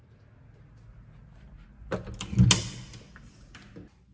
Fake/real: real